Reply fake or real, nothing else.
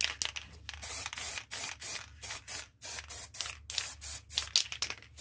real